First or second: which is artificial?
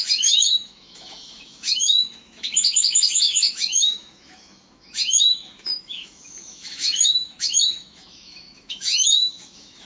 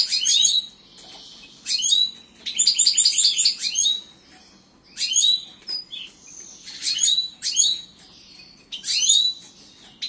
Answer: first